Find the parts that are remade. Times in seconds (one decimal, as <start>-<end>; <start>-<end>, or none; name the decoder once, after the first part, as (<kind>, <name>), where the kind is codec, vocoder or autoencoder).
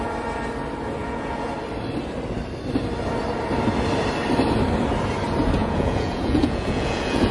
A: 1.0-1.5 (vocoder, Vocos); 5.6-7.3